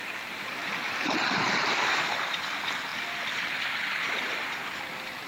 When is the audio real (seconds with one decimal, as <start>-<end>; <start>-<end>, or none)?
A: 0.6-1.8